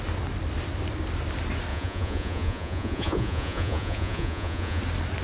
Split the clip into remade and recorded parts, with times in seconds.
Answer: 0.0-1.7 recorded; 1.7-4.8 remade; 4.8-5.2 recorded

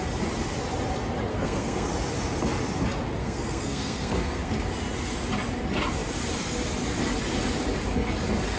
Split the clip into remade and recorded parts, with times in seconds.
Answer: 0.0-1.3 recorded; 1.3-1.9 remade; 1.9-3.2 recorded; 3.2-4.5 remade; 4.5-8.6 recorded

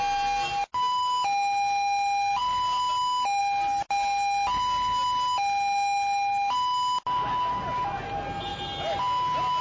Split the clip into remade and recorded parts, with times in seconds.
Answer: 0.0-9.6 recorded